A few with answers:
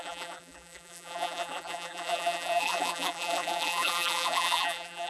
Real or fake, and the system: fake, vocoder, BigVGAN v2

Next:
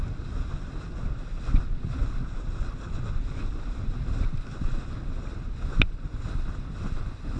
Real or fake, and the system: real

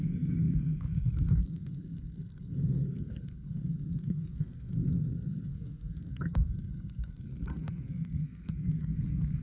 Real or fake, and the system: fake, codec, SNAC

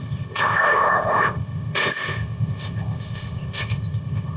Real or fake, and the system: fake, codec, ZipCodec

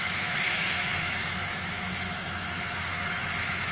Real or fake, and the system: fake, autoencoder, DAC-VAE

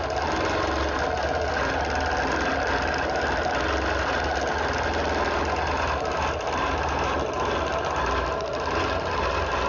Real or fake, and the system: real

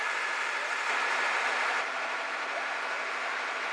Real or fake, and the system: real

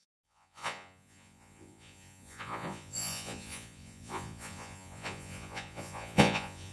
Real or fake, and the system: fake, vocoder, Vocos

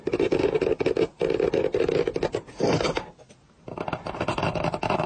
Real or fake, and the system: real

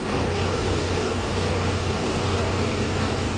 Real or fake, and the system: fake, codec, DAC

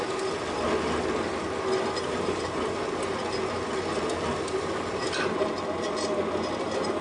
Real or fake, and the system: real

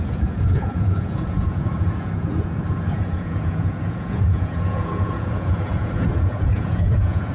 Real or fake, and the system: fake, vocoder, Vocos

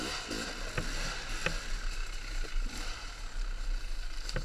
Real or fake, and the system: real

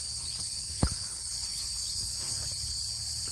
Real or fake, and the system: fake, codec, HILCodec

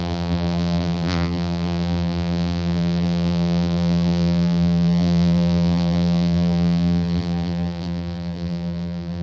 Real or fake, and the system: fake, vocoder, BigVGAN v2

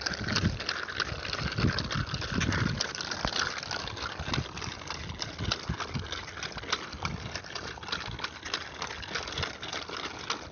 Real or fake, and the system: real